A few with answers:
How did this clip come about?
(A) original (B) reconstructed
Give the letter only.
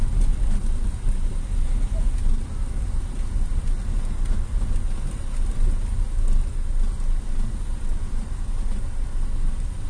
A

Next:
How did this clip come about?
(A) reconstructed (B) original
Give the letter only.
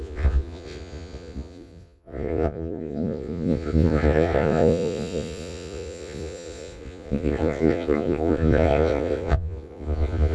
A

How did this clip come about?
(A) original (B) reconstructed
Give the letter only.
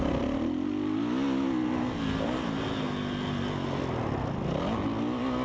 A